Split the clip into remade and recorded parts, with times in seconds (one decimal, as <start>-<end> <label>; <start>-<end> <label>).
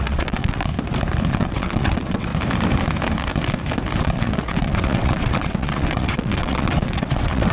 0.0-0.7 remade; 0.7-1.3 recorded; 1.3-2.3 remade; 2.3-4.0 recorded; 4.0-7.5 remade